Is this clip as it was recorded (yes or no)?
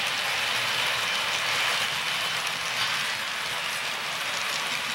yes